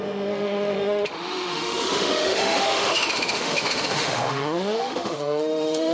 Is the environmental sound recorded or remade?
remade